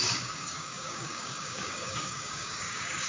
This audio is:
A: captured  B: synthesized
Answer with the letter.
B